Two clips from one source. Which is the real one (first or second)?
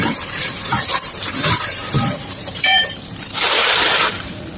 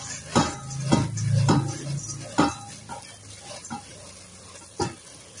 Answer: second